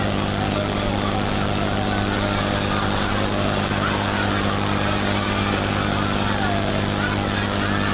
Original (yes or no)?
yes